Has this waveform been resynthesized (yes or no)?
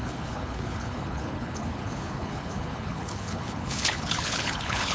yes